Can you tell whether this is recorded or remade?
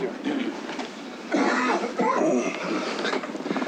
recorded